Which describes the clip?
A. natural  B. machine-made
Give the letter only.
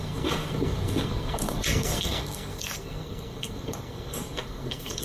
B